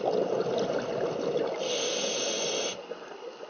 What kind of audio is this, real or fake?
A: real